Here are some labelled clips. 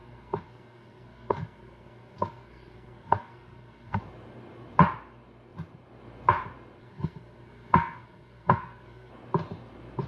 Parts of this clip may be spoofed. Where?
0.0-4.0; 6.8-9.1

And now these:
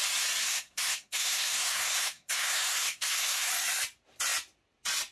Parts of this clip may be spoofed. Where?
0.4-3.5

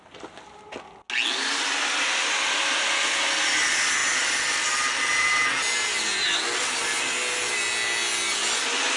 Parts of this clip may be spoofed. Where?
none